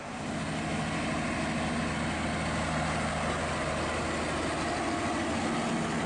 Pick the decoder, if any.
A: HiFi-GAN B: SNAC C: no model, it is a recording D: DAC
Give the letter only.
C